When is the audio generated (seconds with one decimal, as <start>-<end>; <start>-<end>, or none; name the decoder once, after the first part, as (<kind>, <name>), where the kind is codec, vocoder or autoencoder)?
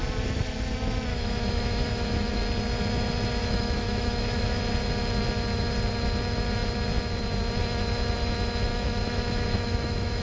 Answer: 1.1-2.4 (autoencoder, DAC-VAE); 3.4-4.6; 8.7-10.2